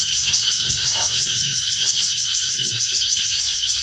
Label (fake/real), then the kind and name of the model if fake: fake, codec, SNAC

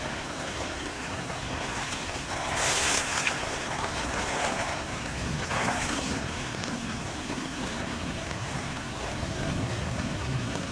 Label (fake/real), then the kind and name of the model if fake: fake, codec, SNAC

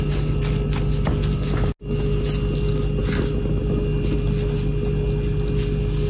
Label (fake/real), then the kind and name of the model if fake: real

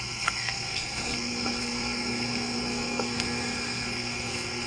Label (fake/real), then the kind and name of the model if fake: fake, codec, SNAC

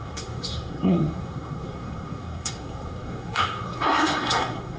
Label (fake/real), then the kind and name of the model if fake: fake, codec, SNAC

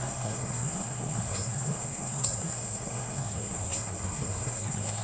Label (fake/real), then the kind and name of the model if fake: fake, codec, SNAC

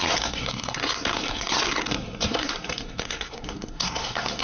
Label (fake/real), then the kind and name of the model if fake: fake, codec, SNAC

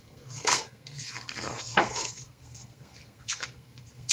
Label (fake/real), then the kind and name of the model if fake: fake, codec, SNAC